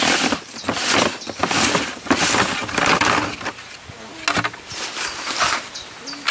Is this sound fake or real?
real